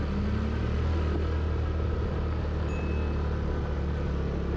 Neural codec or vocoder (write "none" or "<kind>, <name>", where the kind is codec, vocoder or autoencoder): none